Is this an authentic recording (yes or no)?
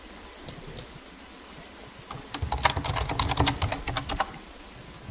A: yes